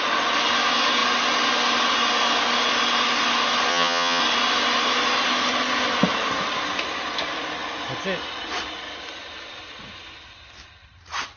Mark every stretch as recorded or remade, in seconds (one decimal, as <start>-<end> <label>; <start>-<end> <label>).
0.0-3.7 recorded; 3.7-4.2 remade; 4.2-11.4 recorded